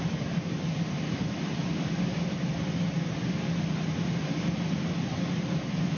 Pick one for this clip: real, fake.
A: real